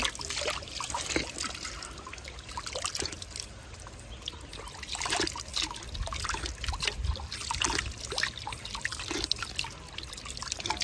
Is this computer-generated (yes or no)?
no